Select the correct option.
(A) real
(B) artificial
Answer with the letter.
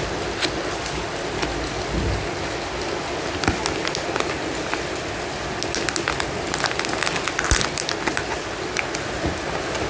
A